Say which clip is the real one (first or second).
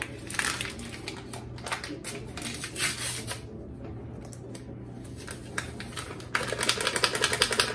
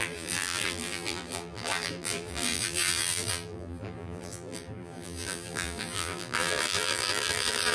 first